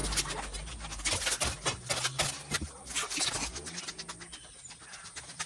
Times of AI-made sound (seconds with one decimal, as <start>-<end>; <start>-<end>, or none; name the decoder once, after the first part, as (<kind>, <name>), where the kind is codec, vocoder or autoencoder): none